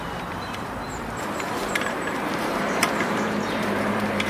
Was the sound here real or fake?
fake